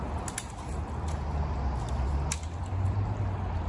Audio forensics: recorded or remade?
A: recorded